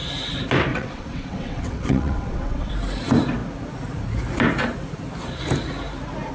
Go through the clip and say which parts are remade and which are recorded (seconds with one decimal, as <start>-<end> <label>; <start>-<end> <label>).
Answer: 0.0-0.7 recorded; 0.7-2.7 remade; 2.7-6.3 recorded